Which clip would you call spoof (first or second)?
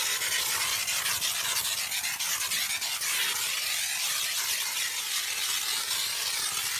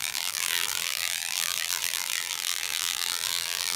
second